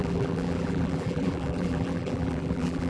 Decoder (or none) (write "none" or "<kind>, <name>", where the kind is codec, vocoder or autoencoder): vocoder, BigVGAN v2